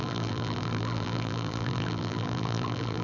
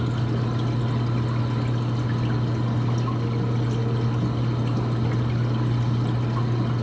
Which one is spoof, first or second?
first